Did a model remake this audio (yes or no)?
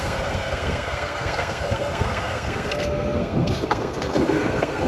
yes